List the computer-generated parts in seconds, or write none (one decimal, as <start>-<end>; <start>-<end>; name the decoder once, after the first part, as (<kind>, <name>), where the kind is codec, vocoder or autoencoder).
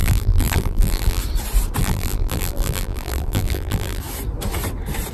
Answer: 0.0-1.2 (vocoder, BigVGAN v2); 1.8-4.0